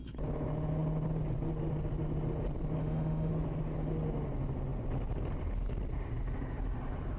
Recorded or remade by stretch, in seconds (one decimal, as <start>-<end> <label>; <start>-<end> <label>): 0.0-2.8 recorded; 2.8-3.3 remade; 3.3-7.2 recorded